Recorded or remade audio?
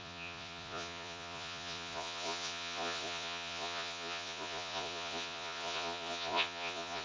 remade